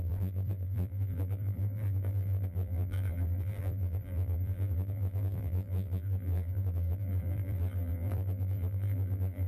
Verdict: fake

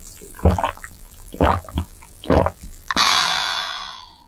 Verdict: fake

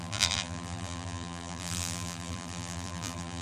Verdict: fake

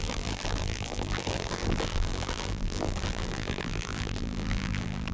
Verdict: fake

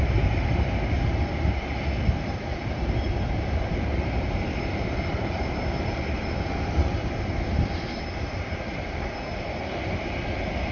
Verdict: fake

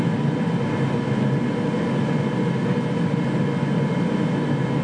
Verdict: real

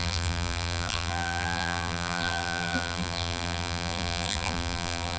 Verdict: fake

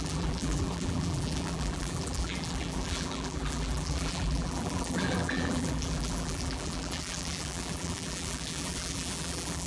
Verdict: fake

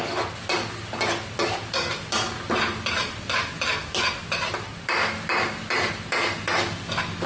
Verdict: real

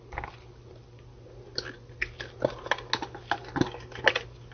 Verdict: real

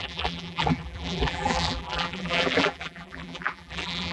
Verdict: fake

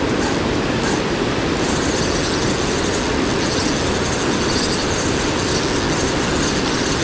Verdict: real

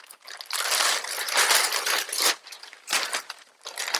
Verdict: real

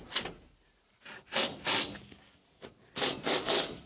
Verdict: real